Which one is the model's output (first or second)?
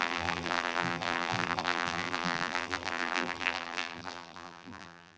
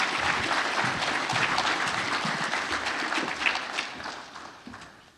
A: first